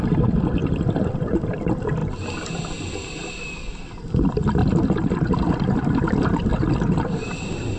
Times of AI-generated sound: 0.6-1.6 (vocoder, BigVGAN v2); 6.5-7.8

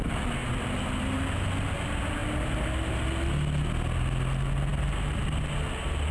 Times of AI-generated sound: none

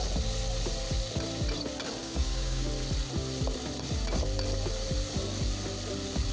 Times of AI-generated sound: 2.0-2.7 (codec, DAC)

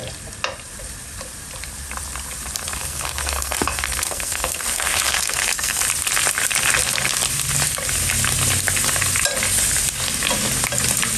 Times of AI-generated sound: 2.8-5.8 (codec, SNAC)

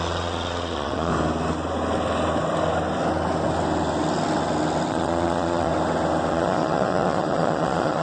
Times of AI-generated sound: 0.0-1.1 (vocoder, Vocos); 4.9-5.7; 6.3-8.0

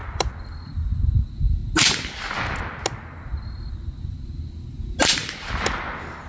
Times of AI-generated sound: none

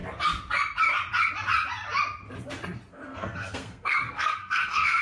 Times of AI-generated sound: 2.9-5.0 (codec, SNAC)

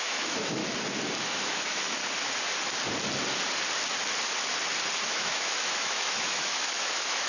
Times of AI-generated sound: 0.0-0.6 (autoencoder, DAC-VAE); 1.2-2.0; 5.1-7.3